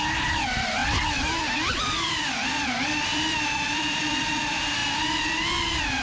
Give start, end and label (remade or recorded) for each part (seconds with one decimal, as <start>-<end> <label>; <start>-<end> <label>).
0.0-0.8 remade; 0.8-1.7 recorded; 1.7-6.0 remade